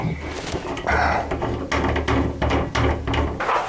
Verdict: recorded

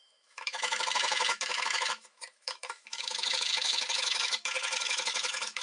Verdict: remade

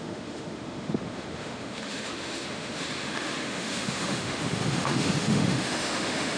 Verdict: remade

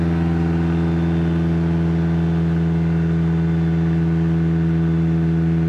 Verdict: recorded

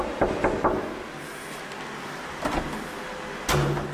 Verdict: recorded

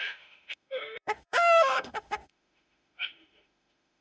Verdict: remade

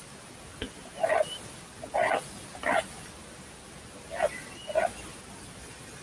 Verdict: recorded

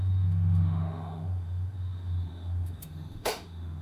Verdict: remade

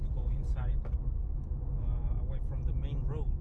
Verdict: recorded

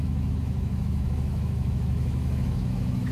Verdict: remade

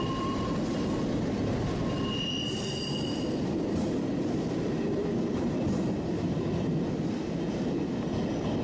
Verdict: recorded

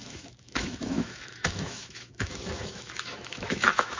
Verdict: remade